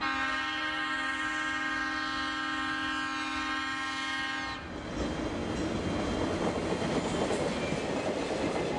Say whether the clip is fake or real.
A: real